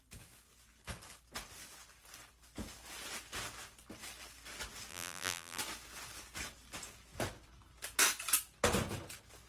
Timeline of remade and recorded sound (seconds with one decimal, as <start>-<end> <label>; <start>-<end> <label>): 0.0-4.9 recorded; 4.9-5.6 remade; 5.6-9.5 recorded